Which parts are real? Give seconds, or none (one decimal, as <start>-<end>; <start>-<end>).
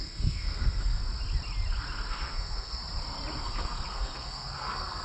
1.0-2.1; 2.8-3.4